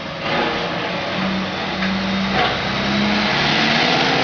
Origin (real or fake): real